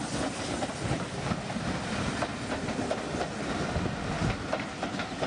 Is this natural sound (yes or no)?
yes